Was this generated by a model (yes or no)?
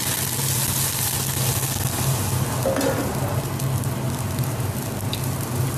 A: no